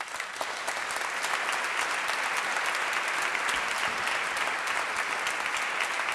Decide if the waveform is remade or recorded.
recorded